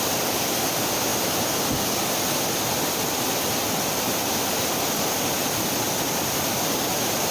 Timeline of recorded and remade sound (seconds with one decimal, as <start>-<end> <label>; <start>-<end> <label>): 0.0-7.3 recorded